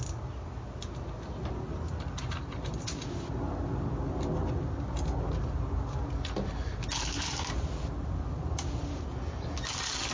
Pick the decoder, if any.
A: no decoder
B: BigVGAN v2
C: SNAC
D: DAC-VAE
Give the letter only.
A